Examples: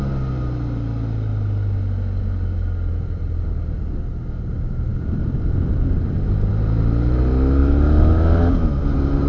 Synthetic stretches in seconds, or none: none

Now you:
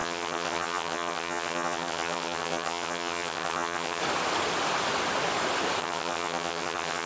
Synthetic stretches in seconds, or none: 0.0-4.0; 5.8-7.1

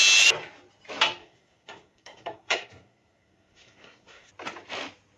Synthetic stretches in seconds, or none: 1.2-4.3

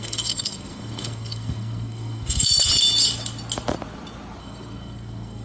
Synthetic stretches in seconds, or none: 0.0-2.7; 4.4-5.4

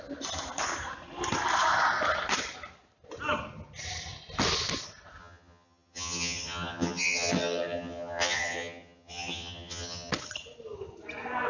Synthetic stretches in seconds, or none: 5.2-10.1

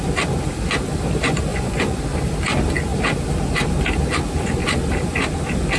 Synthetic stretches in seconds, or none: 1.5-2.0

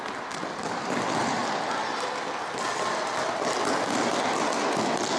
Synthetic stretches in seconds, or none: none

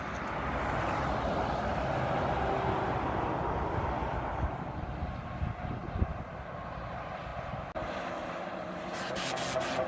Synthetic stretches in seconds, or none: none